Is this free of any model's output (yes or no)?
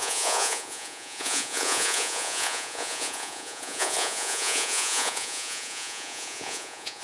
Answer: no